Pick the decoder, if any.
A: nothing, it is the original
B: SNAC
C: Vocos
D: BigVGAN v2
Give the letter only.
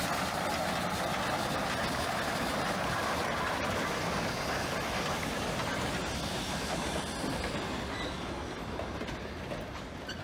A